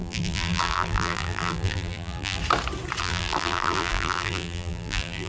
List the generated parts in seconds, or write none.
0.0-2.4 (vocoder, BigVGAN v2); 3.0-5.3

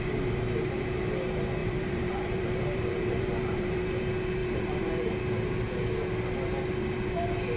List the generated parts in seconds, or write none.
1.6-4.0 (vocoder, BigVGAN v2); 4.4-5.1

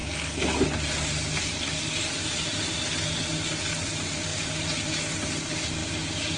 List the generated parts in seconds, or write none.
4.3-4.9 (vocoder, BigVGAN v2)

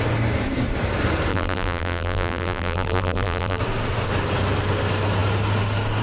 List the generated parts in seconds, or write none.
1.3-3.6 (vocoder, BigVGAN v2)

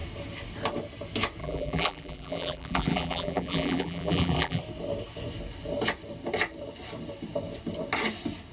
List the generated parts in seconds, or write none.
1.4-4.6 (vocoder, BigVGAN v2)

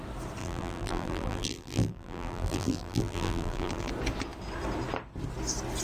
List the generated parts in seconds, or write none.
0.4-3.9 (vocoder, BigVGAN v2)

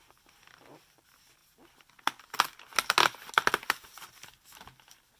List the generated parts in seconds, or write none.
none